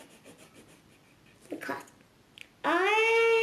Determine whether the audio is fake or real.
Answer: real